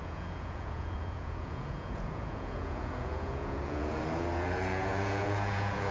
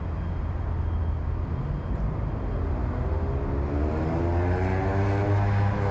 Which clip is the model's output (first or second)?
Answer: first